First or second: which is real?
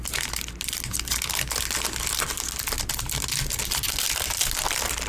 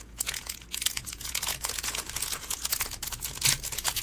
first